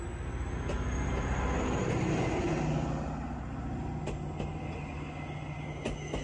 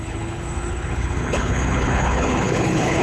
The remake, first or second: second